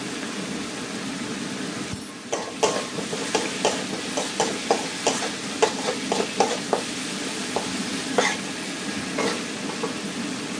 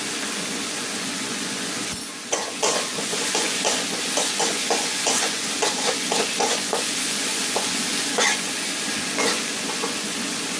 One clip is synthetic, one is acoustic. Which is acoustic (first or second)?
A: first